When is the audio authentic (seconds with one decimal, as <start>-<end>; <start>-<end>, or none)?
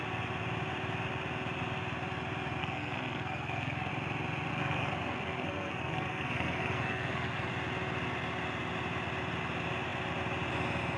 0.0-2.6; 3.9-4.5; 7.5-11.0